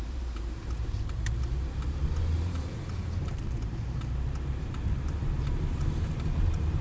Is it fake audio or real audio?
fake